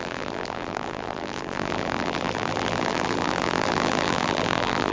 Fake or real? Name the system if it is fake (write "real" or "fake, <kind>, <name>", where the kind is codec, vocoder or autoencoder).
fake, vocoder, BigVGAN v2